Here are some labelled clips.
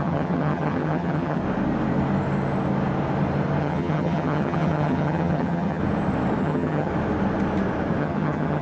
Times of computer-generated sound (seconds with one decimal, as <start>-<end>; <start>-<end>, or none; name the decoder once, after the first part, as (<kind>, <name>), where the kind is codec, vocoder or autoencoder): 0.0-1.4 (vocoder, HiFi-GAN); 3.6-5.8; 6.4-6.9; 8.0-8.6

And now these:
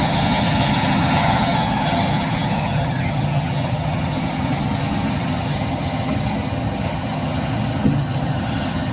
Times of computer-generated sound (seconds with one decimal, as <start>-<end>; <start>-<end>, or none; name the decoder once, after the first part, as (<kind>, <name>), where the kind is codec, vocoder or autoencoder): 0.0-8.9 (vocoder, HiFi-GAN)

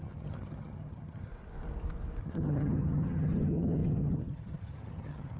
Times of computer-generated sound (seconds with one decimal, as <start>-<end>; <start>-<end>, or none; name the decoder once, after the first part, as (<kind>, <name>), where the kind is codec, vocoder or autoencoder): 0.0-1.3 (vocoder, HiFi-GAN); 2.2-5.4

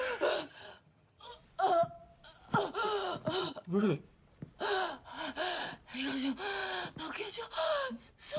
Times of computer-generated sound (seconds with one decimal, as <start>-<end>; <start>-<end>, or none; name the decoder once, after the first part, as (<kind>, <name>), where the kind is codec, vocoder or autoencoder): 0.4-1.3 (vocoder, HiFi-GAN); 3.4-4.0

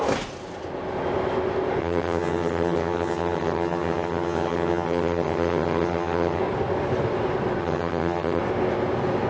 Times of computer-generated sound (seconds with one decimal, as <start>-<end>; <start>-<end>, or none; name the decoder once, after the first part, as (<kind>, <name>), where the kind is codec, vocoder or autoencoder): 1.8-6.4 (vocoder, HiFi-GAN); 7.6-8.4